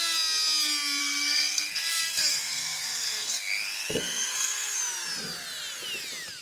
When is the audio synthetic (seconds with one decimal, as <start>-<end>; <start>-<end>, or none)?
1.0-4.8